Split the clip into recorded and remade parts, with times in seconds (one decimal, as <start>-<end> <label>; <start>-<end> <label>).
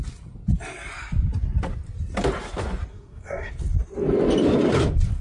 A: 0.0-2.9 recorded; 2.9-3.5 remade; 3.5-5.2 recorded